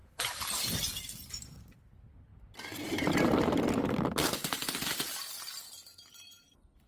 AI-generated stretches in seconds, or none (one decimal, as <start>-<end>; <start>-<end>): 0.0-1.7; 2.3-5.2